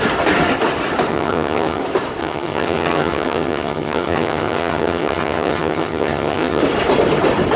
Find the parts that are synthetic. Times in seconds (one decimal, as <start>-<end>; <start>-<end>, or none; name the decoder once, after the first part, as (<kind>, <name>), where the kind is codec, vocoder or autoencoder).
1.1-1.8 (vocoder, HiFi-GAN); 2.2-6.6